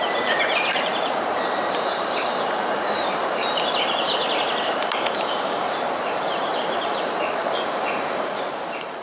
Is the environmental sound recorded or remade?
remade